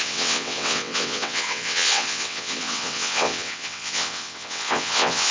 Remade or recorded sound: remade